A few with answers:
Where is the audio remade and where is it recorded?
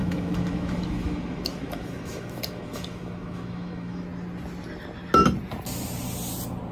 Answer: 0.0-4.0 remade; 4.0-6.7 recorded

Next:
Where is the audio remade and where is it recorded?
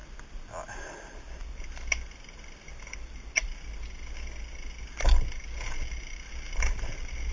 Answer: 0.0-7.3 recorded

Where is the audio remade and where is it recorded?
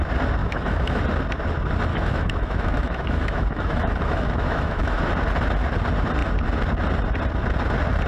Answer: 0.0-0.4 recorded; 0.4-1.0 remade; 1.0-1.9 recorded; 1.9-5.0 remade; 5.0-8.1 recorded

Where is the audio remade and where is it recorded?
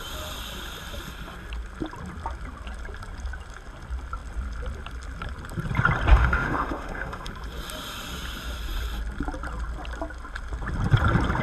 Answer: 0.0-6.1 recorded; 6.1-7.3 remade; 7.3-11.4 recorded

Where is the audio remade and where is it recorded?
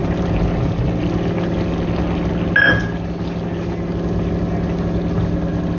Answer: 0.0-5.8 recorded